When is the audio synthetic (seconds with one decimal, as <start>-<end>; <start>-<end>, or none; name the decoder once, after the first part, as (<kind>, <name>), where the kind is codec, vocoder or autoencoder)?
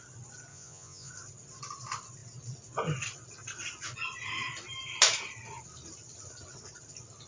0.5-1.1 (vocoder, Vocos)